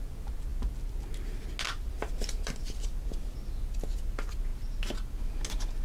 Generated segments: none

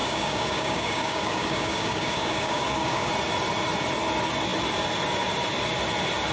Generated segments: 0.0-3.1 (codec, DAC)

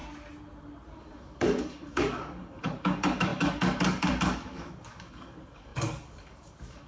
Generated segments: 1.0-6.9 (codec, DAC)

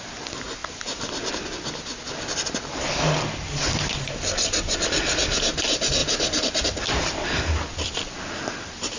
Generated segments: 6.0-8.3 (vocoder, BigVGAN v2)

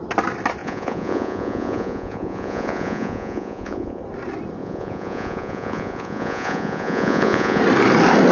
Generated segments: 0.6-4.0 (vocoder, Vocos); 4.6-7.6

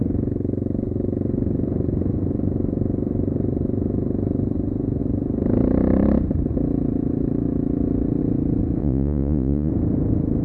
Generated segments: 8.8-9.7 (vocoder, Vocos)